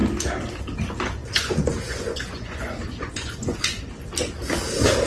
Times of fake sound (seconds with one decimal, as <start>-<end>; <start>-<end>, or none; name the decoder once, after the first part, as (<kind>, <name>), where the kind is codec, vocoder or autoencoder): 1.2-3.9 (vocoder, Vocos)